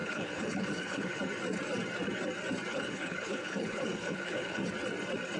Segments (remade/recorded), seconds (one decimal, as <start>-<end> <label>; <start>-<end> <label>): 0.0-1.2 remade; 1.2-2.7 recorded; 2.7-4.6 remade; 4.6-5.4 recorded